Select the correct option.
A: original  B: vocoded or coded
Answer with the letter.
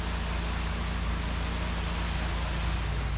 A